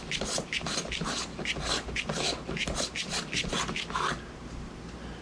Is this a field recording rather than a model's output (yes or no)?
yes